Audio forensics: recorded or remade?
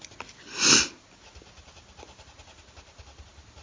recorded